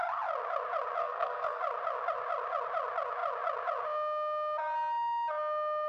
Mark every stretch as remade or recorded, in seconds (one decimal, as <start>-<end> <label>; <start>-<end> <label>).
0.0-1.0 recorded; 1.0-1.6 remade; 1.6-5.9 recorded